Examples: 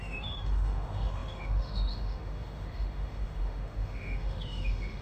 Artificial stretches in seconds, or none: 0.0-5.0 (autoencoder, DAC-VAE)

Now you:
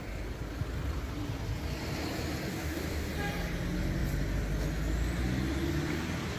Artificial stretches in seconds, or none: 2.5-3.1 (codec, DAC)

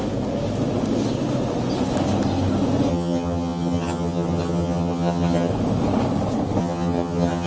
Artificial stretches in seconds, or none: 2.9-5.5 (vocoder, HiFi-GAN); 6.6-7.5

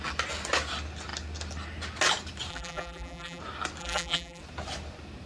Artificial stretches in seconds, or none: 2.5-3.4 (vocoder, BigVGAN v2); 3.8-4.4